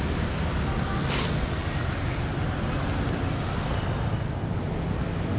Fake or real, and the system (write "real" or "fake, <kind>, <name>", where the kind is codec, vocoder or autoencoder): real